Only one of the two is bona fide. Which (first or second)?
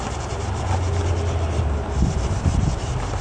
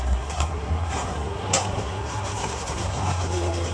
first